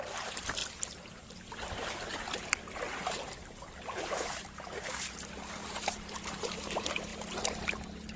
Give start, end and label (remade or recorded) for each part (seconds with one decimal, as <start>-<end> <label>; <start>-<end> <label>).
0.0-0.6 remade; 0.6-5.5 recorded; 5.5-7.1 remade; 7.1-8.2 recorded